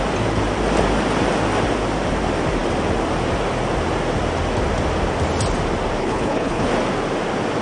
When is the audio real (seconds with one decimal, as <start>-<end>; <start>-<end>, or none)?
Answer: 0.0-6.0; 6.7-7.6